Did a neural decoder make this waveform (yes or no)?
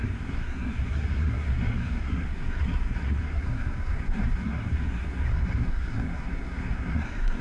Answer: yes